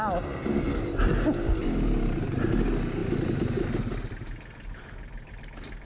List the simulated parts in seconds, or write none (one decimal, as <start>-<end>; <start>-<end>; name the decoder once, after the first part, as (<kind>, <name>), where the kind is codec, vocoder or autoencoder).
none